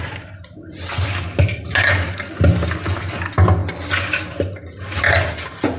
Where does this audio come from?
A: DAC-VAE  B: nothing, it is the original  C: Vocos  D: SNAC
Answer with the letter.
B